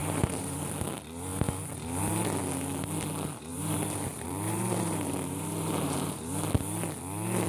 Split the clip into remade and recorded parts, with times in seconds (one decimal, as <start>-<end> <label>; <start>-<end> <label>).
0.0-0.7 remade; 0.7-3.5 recorded; 3.5-6.3 remade; 6.3-7.5 recorded